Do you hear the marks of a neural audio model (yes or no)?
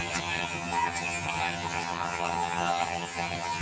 yes